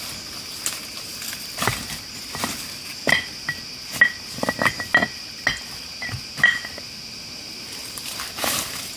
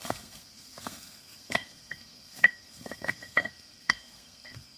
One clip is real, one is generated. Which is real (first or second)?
first